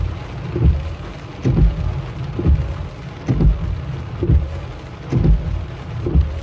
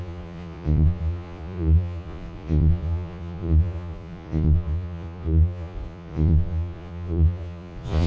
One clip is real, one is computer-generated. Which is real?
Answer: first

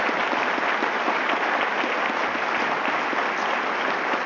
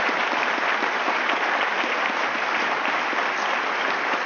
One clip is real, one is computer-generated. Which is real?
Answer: first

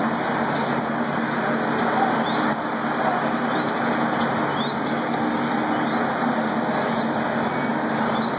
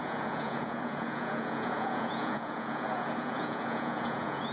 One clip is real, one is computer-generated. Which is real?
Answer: first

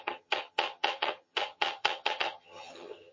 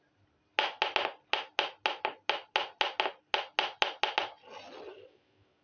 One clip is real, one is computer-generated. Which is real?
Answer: second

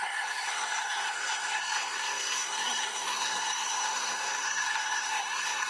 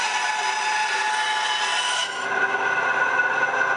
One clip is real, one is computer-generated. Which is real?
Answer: second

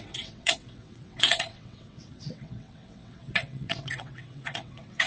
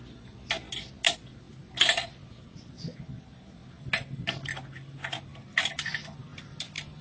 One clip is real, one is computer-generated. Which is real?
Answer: second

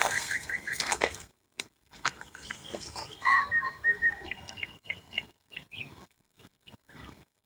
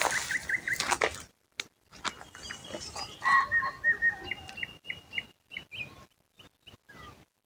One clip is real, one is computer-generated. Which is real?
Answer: second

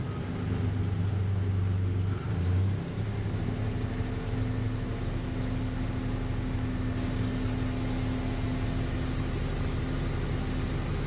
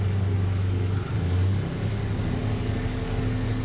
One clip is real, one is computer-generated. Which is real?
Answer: first